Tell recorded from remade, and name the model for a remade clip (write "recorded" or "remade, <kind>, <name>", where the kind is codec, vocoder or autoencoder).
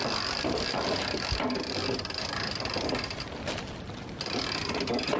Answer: recorded